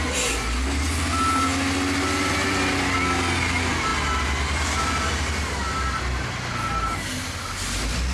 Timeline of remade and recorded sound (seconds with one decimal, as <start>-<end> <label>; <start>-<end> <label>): 0.0-8.1 recorded